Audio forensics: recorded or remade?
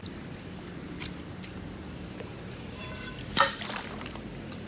remade